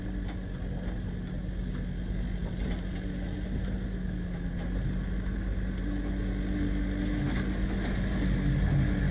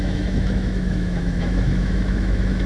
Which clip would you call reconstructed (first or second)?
second